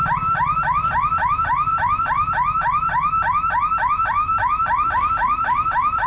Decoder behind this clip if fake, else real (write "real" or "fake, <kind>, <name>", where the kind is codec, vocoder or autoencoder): fake, vocoder, BigVGAN v2